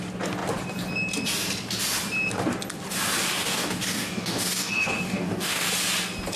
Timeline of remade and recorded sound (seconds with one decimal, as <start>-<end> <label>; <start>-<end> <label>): 0.0-3.3 recorded; 3.3-5.7 remade; 5.7-6.4 recorded